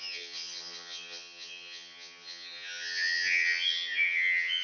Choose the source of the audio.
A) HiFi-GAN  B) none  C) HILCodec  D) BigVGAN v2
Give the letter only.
A